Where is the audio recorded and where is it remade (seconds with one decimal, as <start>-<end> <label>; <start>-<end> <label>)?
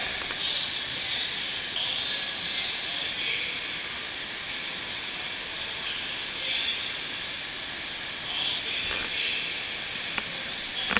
0.0-0.4 recorded; 0.4-1.7 remade; 1.7-11.0 recorded